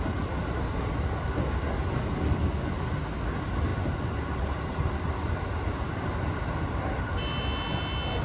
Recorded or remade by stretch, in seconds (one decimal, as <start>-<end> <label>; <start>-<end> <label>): 0.0-3.7 recorded; 3.7-5.7 remade; 5.7-8.2 recorded